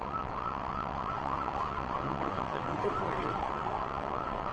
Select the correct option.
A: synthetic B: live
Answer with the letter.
A